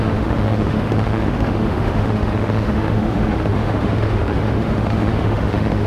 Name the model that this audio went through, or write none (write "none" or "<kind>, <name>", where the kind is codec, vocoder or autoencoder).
autoencoder, DAC-VAE